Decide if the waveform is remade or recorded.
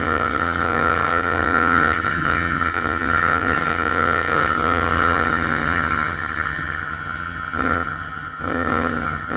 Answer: remade